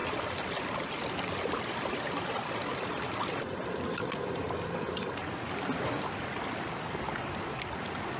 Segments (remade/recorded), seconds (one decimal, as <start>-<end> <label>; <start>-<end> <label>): 0.0-8.2 recorded